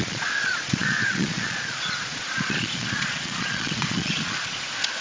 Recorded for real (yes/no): no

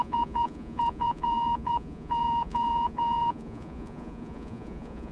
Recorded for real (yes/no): no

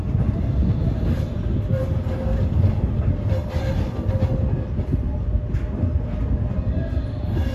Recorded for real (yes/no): yes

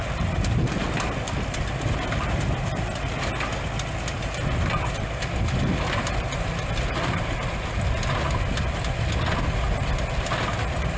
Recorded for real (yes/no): yes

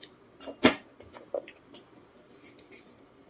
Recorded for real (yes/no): yes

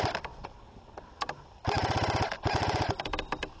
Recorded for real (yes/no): yes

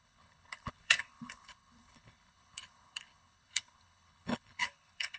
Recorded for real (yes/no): no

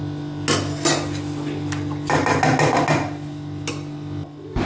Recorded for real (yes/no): yes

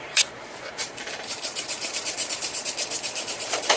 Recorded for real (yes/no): no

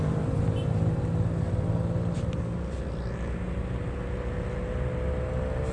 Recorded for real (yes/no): yes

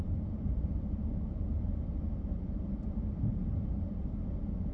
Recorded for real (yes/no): no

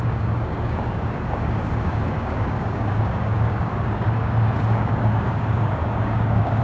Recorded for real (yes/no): no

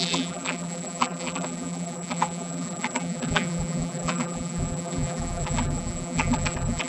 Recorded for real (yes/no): no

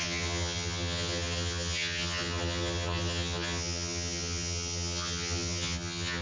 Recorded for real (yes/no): no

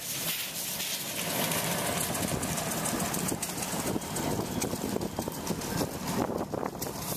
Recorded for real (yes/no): yes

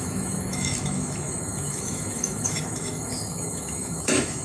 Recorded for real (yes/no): no